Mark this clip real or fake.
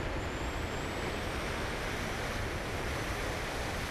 real